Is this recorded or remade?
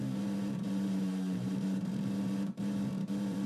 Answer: remade